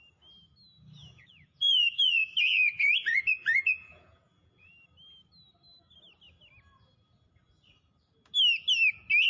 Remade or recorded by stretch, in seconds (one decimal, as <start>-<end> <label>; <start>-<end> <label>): 0.0-1.0 recorded; 1.0-4.7 remade; 4.7-9.3 recorded